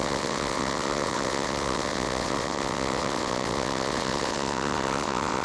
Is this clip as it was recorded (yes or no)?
no